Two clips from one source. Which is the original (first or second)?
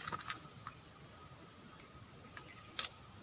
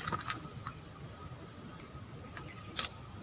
first